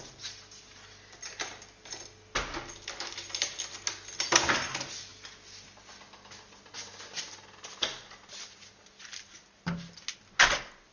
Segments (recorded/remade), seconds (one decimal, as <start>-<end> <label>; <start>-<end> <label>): 0.0-10.9 recorded